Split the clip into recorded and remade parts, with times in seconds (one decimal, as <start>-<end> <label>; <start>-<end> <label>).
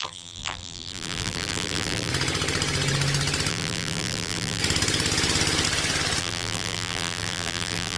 0.0-2.1 remade; 2.1-3.5 recorded; 3.5-4.6 remade; 4.6-6.2 recorded; 6.2-8.0 remade